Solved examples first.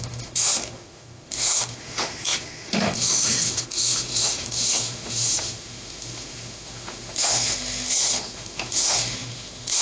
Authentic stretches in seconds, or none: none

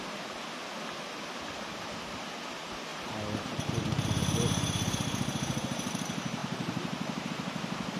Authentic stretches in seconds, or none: 0.0-2.9; 6.0-6.4; 7.3-8.0

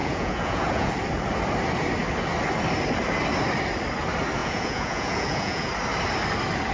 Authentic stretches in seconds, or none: 0.9-4.4; 5.7-6.7

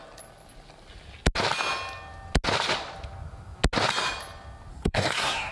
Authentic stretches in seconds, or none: 0.0-4.7